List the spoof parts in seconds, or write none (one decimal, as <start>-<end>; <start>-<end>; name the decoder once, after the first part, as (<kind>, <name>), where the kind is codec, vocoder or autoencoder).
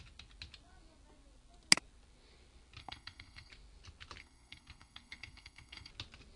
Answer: 2.8-3.5 (codec, SNAC); 4.2-5.9